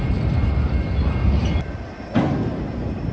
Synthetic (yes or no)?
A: no